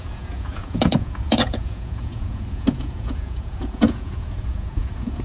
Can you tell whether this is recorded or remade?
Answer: remade